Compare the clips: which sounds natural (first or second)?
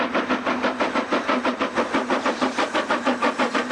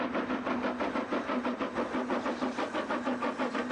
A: second